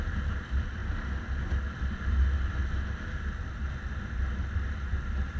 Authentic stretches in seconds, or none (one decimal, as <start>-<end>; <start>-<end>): 0.0-5.4